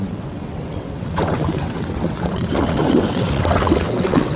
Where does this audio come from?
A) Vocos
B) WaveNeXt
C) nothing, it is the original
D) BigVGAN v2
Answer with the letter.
B